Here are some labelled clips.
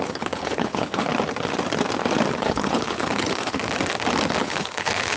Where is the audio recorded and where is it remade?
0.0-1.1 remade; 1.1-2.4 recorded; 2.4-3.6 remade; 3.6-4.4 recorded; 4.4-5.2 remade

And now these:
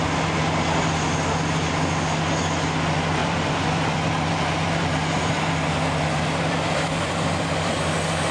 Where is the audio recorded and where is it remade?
0.0-3.2 recorded; 3.2-7.7 remade; 7.7-8.3 recorded

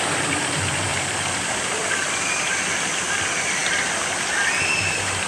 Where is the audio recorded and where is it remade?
0.0-5.3 recorded

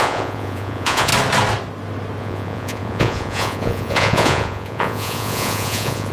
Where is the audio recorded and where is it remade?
0.0-1.1 remade; 1.1-2.2 recorded; 2.2-6.1 remade

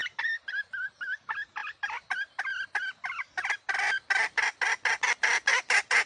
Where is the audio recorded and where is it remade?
0.0-0.5 remade; 0.5-5.5 recorded; 5.5-6.1 remade

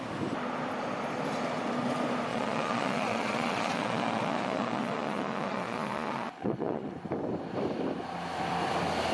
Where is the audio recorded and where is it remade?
0.0-2.3 recorded; 2.3-6.9 remade; 6.9-9.1 recorded